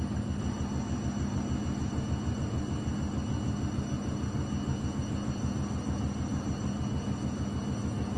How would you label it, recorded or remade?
recorded